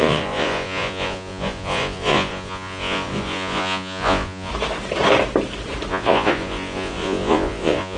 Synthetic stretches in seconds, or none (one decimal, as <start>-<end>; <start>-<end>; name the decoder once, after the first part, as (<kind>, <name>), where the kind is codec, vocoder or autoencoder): 0.0-4.5 (vocoder, Vocos); 5.9-8.0